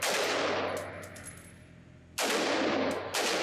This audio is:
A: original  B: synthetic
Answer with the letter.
A